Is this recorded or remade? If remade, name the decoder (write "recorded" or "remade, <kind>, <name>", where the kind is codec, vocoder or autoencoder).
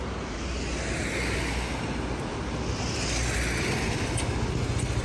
recorded